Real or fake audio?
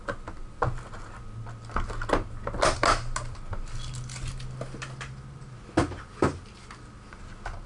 real